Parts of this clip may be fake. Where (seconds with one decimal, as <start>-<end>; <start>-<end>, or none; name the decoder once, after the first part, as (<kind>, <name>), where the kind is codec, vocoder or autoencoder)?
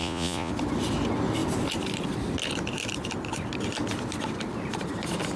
0.0-0.5 (vocoder, Vocos)